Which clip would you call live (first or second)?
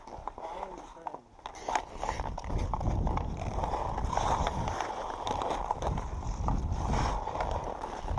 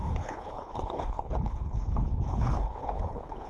first